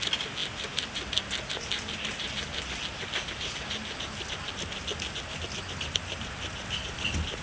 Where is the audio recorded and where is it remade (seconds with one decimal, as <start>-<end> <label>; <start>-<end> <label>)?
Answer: 0.0-7.4 recorded

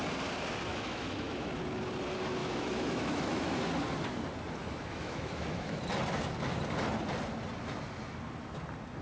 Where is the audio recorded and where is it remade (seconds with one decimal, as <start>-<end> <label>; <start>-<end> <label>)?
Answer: 0.0-0.7 recorded; 0.7-1.5 remade; 1.5-2.4 recorded; 2.4-3.6 remade; 3.6-4.6 recorded; 4.6-5.8 remade; 5.8-9.0 recorded

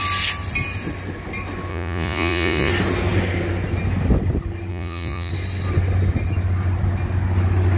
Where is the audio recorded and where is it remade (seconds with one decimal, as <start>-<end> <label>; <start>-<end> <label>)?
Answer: 0.0-1.7 recorded; 1.7-2.7 remade; 2.7-4.7 recorded; 4.7-5.3 remade; 5.3-7.8 recorded

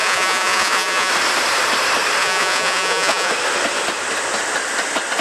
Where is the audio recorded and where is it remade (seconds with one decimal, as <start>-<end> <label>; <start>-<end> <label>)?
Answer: 0.0-1.1 remade; 1.1-2.2 recorded; 2.2-3.3 remade; 3.3-5.2 recorded

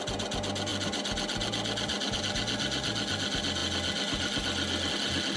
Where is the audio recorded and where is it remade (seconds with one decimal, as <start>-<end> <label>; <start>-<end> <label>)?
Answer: 0.0-5.4 recorded

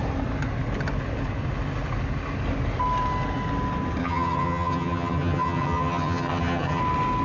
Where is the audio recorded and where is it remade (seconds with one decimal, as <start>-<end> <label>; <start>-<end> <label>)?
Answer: 0.0-4.0 recorded; 4.0-6.8 remade; 6.8-7.2 recorded